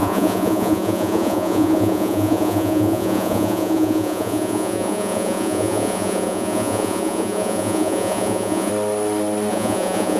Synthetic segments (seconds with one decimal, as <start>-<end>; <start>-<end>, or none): 0.0-8.7; 9.5-10.2